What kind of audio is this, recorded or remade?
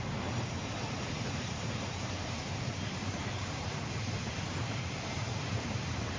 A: remade